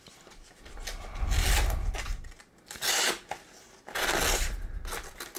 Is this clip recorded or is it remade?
recorded